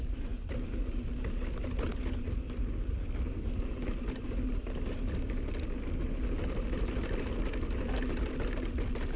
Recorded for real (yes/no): yes